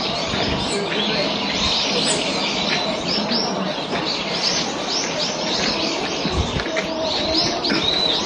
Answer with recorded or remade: recorded